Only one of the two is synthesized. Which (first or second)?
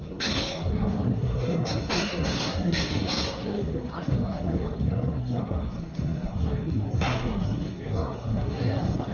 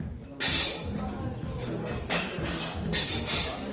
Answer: first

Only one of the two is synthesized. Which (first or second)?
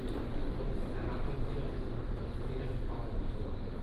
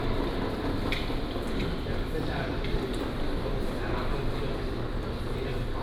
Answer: second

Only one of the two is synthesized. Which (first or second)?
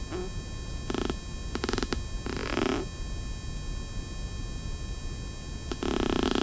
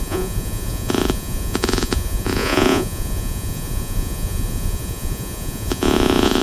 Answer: second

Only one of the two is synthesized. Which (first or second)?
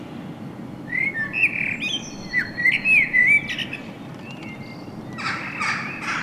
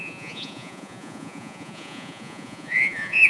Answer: second